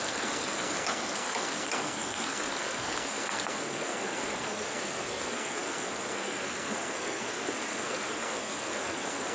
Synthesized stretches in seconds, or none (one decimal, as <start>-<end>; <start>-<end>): 0.0-9.3